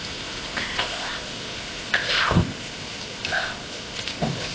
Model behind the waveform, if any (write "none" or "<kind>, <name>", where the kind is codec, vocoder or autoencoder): codec, ZipCodec